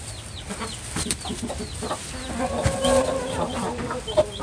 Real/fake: real